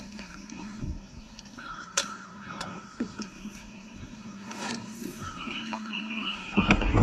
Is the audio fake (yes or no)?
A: yes